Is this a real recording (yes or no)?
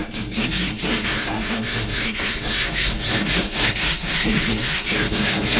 no